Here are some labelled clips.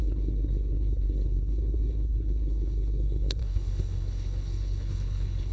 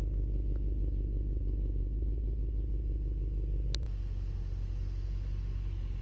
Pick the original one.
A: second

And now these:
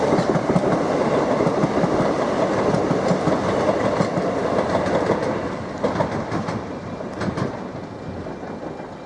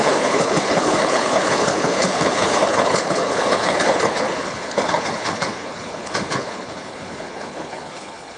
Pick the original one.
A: first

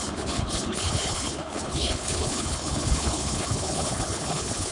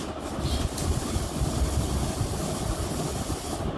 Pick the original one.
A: second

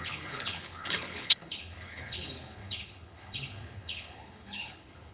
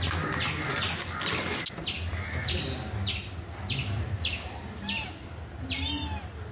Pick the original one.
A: second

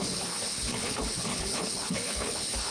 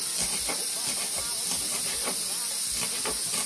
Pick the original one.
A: second